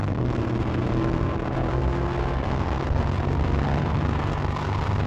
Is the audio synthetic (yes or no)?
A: yes